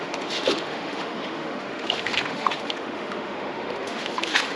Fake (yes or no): yes